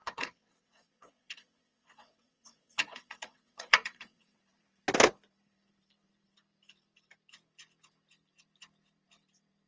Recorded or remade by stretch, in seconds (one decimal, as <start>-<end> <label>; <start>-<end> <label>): 0.0-4.4 remade; 4.4-9.7 recorded